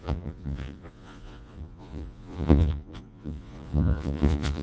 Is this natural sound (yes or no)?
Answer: no